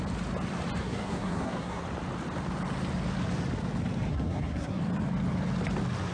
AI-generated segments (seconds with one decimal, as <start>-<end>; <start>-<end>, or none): 0.8-1.8; 4.1-4.8